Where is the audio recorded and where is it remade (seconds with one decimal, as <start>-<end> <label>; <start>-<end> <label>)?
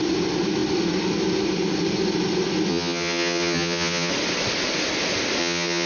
0.0-2.7 recorded; 2.7-4.1 remade; 4.1-5.4 recorded; 5.4-5.9 remade